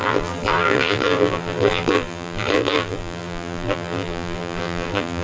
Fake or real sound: fake